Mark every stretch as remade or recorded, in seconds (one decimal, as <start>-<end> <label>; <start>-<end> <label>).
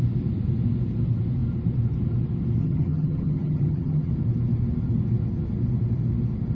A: 0.0-2.6 recorded; 2.6-4.1 remade; 4.1-6.5 recorded